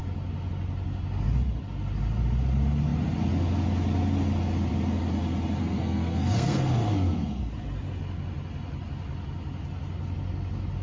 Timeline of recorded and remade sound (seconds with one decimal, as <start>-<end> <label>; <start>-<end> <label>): 0.0-5.6 recorded; 5.6-7.4 remade; 7.4-10.8 recorded